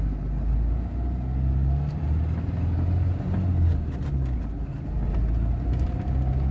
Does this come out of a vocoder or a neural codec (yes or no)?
no